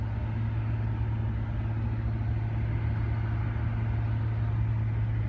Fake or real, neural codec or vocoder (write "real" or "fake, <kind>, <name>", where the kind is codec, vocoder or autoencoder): real